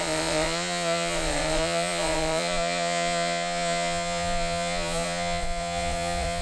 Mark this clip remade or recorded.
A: remade